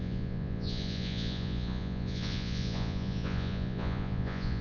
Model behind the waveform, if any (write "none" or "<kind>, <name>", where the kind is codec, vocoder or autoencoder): vocoder, Vocos